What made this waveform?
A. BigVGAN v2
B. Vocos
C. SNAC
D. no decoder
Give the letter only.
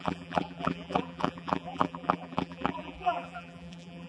A